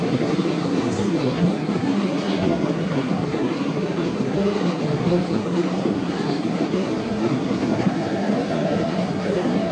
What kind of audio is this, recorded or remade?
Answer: remade